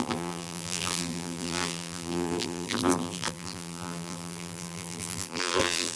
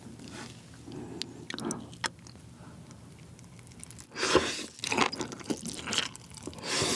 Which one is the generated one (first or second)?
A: first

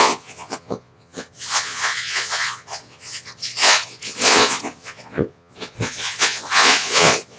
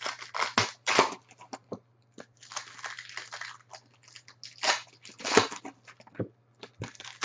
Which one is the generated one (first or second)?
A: first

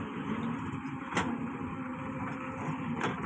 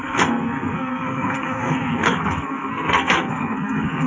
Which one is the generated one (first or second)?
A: second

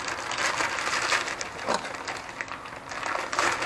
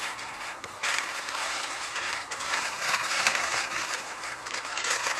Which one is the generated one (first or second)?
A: second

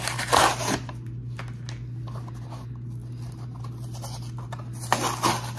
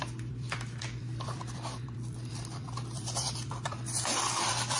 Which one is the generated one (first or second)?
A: second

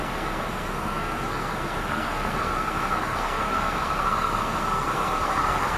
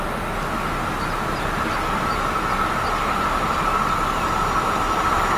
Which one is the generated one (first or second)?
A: first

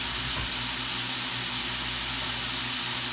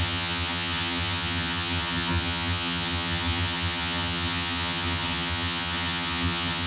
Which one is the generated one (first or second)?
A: second